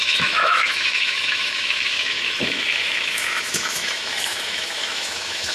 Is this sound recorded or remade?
remade